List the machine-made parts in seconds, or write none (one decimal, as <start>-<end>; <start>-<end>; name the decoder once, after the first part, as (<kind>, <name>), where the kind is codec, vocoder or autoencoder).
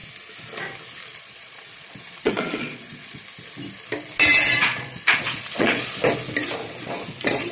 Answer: 1.2-3.2 (vocoder, Vocos); 4.6-6.0; 6.8-7.5